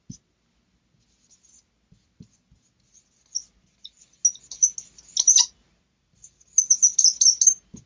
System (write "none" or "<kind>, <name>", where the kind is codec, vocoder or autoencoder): none